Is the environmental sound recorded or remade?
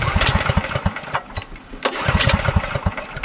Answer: recorded